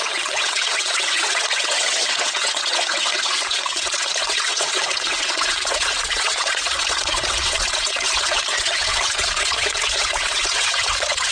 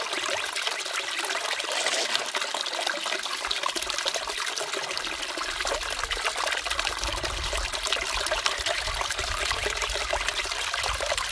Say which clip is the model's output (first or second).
first